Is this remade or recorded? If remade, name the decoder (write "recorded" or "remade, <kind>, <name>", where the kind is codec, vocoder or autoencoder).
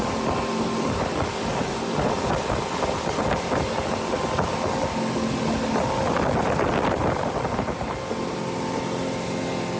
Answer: recorded